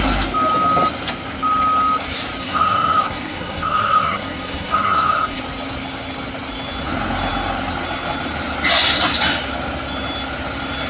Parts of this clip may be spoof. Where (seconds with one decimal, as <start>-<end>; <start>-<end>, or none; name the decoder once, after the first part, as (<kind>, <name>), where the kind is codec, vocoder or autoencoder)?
2.4-5.4 (codec, SNAC)

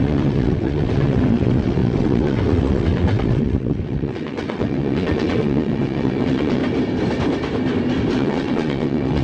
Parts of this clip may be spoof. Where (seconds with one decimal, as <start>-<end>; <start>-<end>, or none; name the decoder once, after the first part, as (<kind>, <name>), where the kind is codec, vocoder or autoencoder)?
0.0-6.6 (vocoder, WaveNeXt); 8.1-9.2

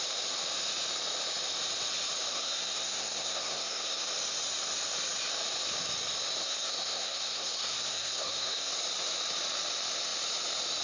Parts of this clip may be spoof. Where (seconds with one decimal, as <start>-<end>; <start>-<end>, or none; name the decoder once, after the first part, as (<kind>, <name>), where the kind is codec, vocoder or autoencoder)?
2.3-4.0 (codec, SNAC); 6.4-8.7

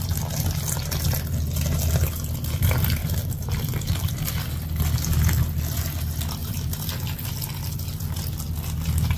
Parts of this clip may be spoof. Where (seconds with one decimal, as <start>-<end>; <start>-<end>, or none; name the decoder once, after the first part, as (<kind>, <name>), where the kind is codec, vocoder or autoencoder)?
3.0-4.4 (vocoder, BigVGAN v2); 6.4-7.2

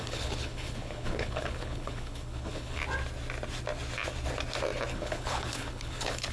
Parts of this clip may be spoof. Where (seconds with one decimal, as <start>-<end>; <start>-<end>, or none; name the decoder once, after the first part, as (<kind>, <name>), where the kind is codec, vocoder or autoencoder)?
0.0-2.8 (codec, HILCodec); 4.9-6.3

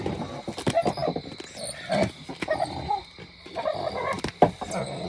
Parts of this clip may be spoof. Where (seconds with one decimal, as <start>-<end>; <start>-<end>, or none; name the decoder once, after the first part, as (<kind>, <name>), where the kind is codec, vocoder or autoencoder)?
none

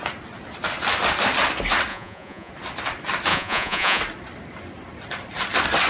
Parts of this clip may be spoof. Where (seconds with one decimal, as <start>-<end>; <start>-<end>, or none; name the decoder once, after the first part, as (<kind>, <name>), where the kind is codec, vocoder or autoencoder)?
1.9-2.5 (vocoder, Vocos); 3.3-4.0